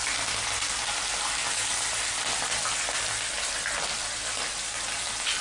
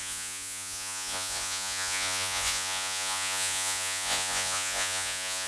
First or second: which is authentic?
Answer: first